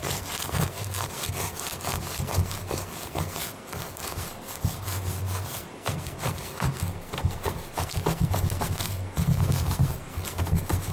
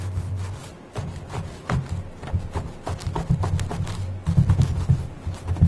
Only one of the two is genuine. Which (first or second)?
second